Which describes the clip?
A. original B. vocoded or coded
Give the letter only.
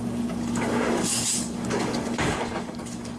B